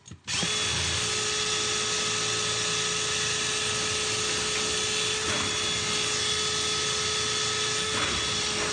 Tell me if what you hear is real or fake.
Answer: real